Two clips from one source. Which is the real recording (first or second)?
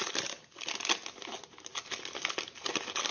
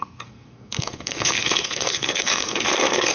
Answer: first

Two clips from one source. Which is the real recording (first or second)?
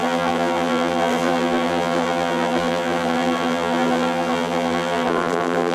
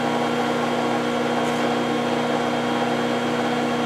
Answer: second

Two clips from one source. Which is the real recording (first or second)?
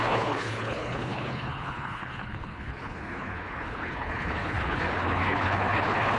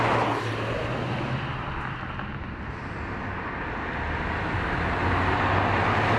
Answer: second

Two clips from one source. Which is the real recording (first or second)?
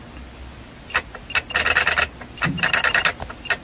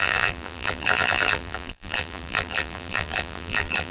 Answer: first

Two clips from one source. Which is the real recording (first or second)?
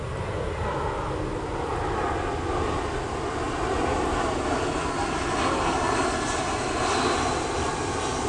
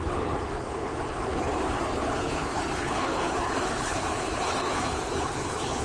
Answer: first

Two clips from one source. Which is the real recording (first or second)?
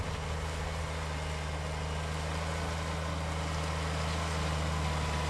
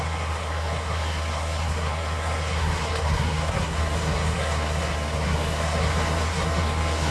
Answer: first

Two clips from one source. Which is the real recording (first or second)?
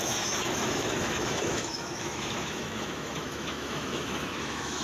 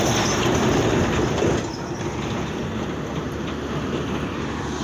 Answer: second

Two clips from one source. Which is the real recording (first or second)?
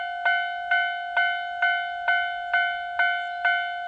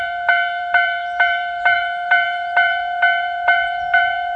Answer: first